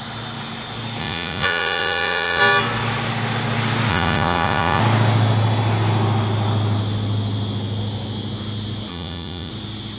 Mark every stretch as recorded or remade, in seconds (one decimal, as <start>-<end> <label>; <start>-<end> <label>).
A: 0.0-1.0 recorded; 1.0-2.4 remade; 2.4-3.9 recorded; 3.9-4.8 remade; 4.8-8.9 recorded; 8.9-9.5 remade; 9.5-10.0 recorded